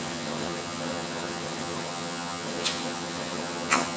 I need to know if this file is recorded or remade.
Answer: remade